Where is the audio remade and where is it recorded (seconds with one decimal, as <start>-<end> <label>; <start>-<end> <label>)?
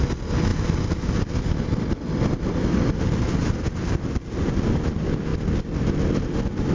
0.0-6.7 recorded